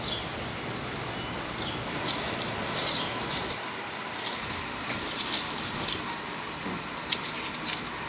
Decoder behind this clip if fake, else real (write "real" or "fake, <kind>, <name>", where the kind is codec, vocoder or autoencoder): real